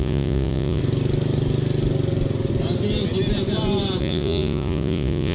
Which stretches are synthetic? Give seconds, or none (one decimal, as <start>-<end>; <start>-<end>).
0.0-0.8; 4.0-5.3